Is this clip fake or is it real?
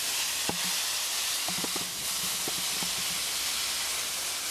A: real